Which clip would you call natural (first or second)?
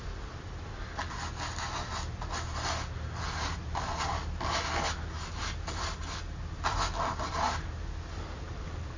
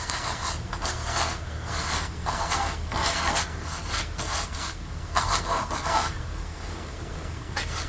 first